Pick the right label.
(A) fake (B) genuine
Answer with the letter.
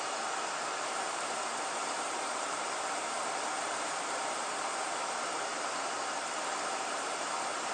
A